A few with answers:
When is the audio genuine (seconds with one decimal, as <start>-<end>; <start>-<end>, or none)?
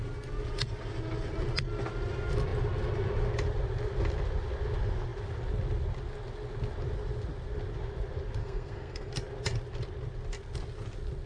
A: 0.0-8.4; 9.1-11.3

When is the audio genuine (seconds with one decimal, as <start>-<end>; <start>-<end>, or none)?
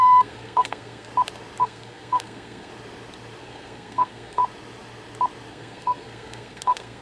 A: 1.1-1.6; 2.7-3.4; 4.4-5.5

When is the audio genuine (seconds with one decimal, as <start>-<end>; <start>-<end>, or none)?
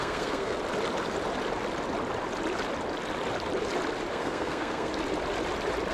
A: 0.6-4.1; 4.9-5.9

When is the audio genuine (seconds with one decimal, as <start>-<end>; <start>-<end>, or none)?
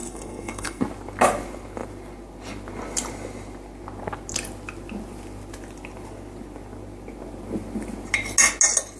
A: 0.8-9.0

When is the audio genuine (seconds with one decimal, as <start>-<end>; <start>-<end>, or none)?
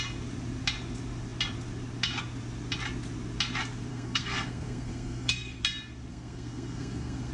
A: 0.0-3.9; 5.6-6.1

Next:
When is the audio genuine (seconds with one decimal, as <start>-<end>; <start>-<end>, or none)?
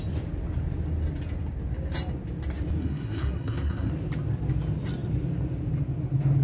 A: 0.0-2.8; 3.9-6.4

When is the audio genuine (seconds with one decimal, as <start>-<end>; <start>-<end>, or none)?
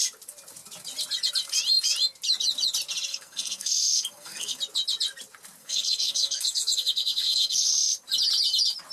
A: 0.0-3.1; 4.6-5.6; 7.7-8.9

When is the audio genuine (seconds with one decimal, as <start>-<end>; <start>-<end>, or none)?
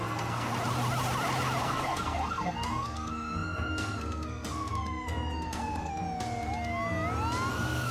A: 0.5-1.6; 6.0-7.5